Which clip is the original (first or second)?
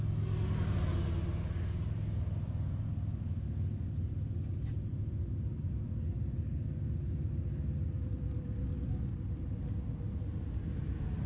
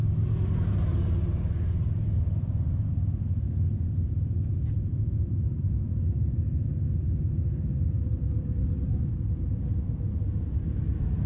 first